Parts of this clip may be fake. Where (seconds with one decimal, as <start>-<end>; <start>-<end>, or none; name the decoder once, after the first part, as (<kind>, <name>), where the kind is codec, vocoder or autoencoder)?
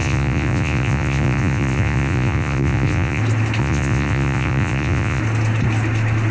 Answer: 0.0-3.2 (vocoder, Vocos); 3.6-5.2